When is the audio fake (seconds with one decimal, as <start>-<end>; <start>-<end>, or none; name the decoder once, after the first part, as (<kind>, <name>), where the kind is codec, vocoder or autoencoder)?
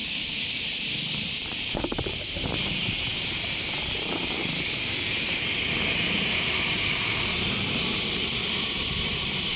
0.0-9.6 (vocoder, BigVGAN v2)